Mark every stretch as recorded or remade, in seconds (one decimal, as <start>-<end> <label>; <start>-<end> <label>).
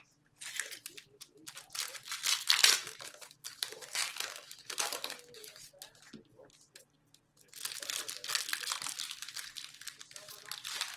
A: 0.0-2.8 recorded; 2.8-5.7 remade; 5.7-11.0 recorded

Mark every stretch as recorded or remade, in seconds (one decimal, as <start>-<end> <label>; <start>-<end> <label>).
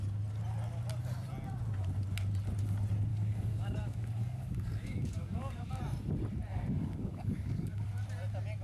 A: 0.0-3.1 recorded; 3.1-5.8 remade; 5.8-6.5 recorded; 6.5-7.9 remade; 7.9-8.6 recorded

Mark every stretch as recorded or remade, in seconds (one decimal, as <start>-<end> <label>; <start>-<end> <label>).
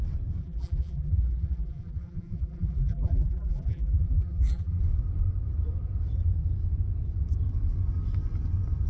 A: 0.0-0.4 recorded; 0.4-4.8 remade; 4.8-8.9 recorded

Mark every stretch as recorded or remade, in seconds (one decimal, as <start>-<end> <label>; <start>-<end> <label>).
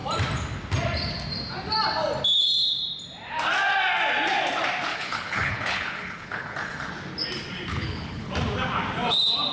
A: 0.0-4.9 recorded; 4.9-6.9 remade; 6.9-7.7 recorded; 7.7-8.3 remade; 8.3-9.5 recorded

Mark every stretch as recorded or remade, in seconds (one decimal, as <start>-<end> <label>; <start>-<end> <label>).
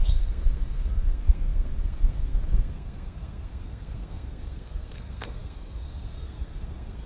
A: 0.0-7.1 remade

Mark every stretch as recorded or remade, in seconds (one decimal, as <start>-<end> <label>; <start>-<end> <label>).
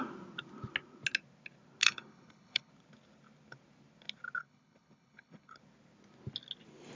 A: 0.0-1.8 recorded; 1.8-2.7 remade; 2.7-4.4 recorded; 4.4-5.6 remade; 5.6-7.0 recorded